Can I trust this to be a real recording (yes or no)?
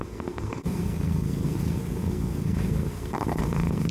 no